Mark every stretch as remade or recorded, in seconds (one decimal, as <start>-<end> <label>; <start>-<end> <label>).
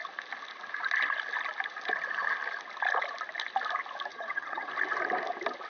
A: 0.0-4.1 recorded; 4.1-4.7 remade; 4.7-5.7 recorded